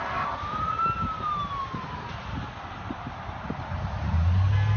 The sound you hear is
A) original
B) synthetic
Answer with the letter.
A